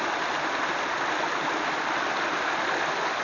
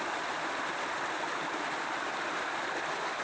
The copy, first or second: second